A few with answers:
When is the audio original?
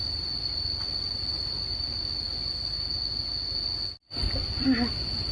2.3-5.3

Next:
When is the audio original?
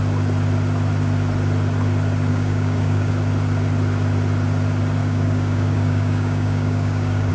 0.0-2.3; 3.1-5.0